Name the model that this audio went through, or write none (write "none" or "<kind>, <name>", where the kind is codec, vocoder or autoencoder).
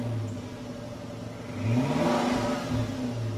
none